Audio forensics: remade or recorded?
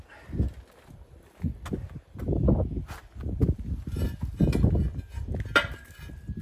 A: recorded